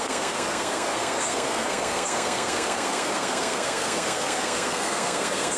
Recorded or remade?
remade